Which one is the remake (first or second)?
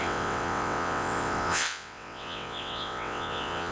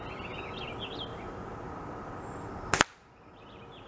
first